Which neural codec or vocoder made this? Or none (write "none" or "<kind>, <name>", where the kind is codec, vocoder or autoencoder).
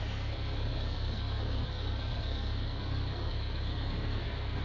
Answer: codec, SNAC